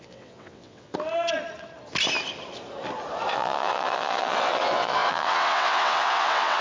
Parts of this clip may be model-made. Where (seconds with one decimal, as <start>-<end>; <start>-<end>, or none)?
0.0-0.9; 3.3-6.6